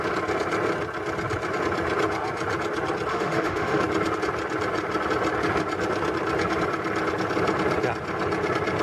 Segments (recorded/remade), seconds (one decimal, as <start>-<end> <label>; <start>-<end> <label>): 0.0-3.1 recorded; 3.1-3.8 remade; 3.8-8.8 recorded